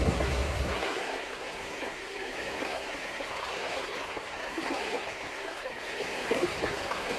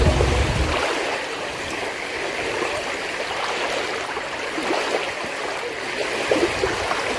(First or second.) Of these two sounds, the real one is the second